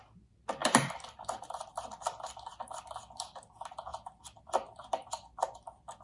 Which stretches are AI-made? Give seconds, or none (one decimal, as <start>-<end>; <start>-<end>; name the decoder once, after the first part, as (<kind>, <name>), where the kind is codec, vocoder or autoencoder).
0.6-2.9 (vocoder, BigVGAN v2); 3.9-5.4